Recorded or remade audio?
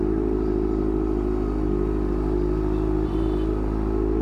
recorded